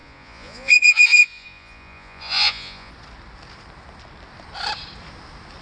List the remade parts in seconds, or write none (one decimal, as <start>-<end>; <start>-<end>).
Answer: 0.0-2.9